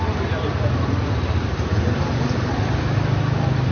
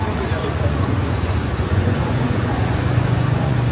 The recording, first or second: first